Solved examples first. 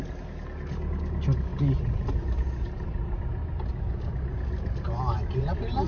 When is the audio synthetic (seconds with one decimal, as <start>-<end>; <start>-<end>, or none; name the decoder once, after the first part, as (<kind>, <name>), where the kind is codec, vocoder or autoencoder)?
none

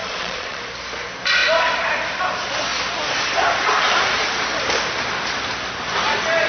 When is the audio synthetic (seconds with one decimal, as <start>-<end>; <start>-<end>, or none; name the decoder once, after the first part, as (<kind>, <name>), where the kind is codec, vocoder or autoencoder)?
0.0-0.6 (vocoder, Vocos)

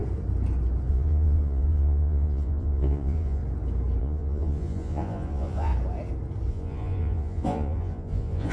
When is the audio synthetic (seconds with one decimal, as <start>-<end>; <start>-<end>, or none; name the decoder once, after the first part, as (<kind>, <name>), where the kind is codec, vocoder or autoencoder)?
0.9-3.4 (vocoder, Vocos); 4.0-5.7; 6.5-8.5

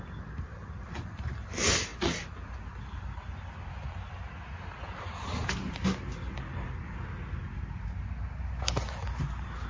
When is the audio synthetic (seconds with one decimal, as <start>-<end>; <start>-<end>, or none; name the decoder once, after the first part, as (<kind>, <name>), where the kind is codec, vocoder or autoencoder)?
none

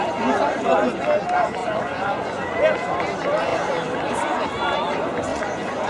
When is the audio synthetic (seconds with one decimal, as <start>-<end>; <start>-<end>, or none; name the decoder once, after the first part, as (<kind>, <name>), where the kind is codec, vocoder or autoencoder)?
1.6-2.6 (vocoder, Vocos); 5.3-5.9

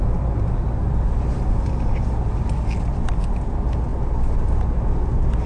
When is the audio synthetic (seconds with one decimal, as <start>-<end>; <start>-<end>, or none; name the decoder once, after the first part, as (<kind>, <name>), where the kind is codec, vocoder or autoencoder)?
none

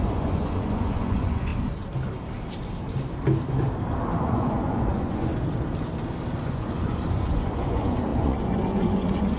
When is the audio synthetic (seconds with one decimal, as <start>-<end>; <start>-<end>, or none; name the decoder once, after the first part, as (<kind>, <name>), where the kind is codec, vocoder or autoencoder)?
0.0-1.5 (vocoder, Vocos); 4.2-5.3; 6.4-9.4